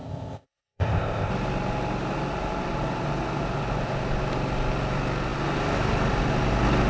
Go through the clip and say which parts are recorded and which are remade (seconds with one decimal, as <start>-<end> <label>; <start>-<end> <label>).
0.0-1.3 remade; 1.3-6.9 recorded